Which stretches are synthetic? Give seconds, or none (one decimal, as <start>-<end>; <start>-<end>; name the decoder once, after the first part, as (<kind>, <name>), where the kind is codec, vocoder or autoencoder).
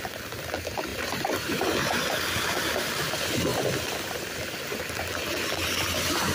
0.9-2.4 (vocoder, BigVGAN v2); 3.5-5.0